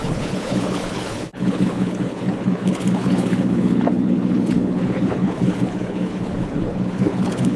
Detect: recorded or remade remade